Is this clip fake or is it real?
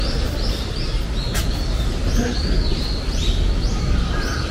real